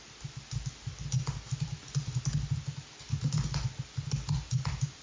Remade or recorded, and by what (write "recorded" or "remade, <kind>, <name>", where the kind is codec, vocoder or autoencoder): recorded